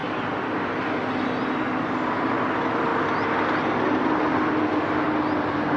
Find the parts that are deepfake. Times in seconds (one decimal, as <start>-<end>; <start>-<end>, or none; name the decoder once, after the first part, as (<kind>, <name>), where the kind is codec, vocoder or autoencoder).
none